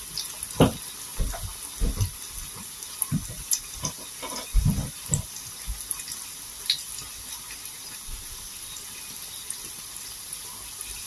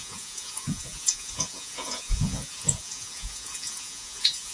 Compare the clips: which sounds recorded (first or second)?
first